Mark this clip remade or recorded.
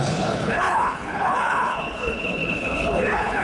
remade